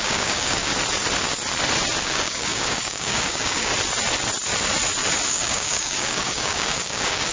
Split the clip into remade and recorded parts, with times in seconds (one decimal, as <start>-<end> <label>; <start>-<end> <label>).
0.0-0.7 remade; 0.7-2.0 recorded; 2.0-3.7 remade; 3.7-5.3 recorded; 5.3-7.3 remade